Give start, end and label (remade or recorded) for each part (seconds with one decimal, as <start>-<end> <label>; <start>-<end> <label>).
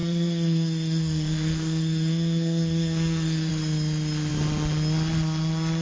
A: 0.0-3.5 remade; 3.5-5.8 recorded